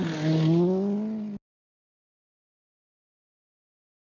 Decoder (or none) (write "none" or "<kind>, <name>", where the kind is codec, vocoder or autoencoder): none